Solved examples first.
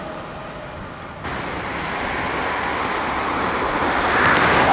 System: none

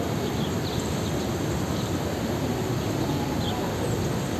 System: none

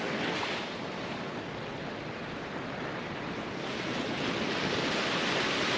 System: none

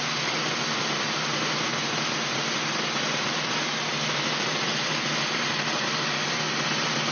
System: none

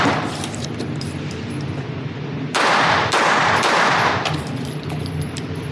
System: vocoder, BigVGAN v2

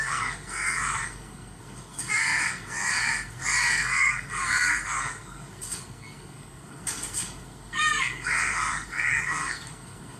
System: codec, SNAC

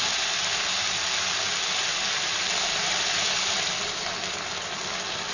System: none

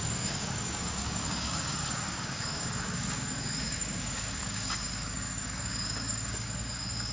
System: codec, DAC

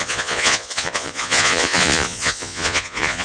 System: vocoder, Vocos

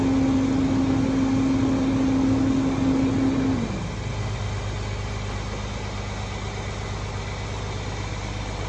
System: none